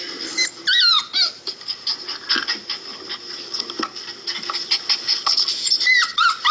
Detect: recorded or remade recorded